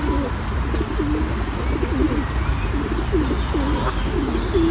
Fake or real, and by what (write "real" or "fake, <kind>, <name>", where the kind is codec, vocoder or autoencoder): real